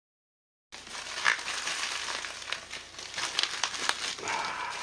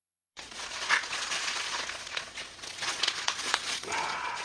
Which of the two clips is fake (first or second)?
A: second